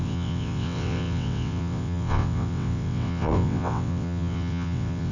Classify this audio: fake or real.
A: fake